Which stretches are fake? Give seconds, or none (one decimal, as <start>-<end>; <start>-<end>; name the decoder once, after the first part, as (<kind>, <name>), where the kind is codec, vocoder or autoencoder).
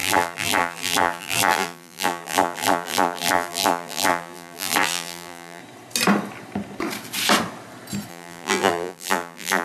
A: 0.0-5.6 (vocoder, BigVGAN v2); 8.1-9.6